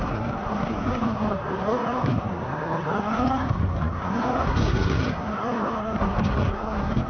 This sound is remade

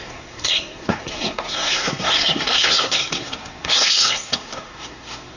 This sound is remade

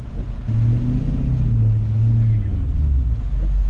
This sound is recorded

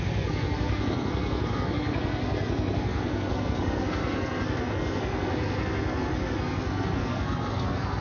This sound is remade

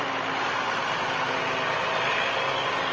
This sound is recorded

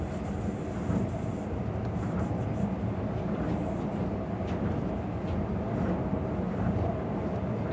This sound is recorded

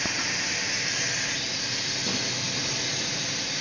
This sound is recorded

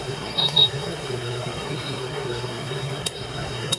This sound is remade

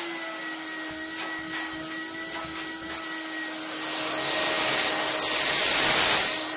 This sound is recorded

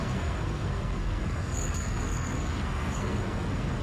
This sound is remade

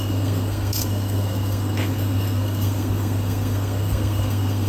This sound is remade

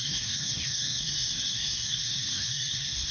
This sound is remade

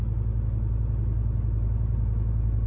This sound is recorded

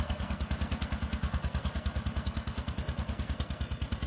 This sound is remade